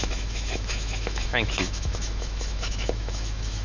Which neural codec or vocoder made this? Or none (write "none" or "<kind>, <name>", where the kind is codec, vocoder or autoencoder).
autoencoder, DAC-VAE